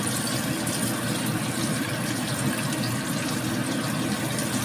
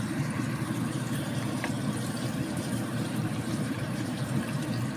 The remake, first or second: second